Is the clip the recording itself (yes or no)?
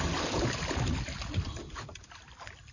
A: yes